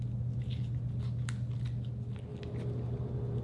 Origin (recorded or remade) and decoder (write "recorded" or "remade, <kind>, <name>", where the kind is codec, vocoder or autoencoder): recorded